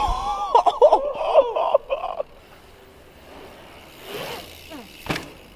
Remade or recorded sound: recorded